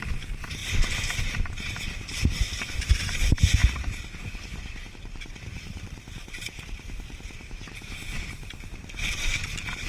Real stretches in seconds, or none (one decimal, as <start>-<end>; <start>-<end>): 3.6-4.9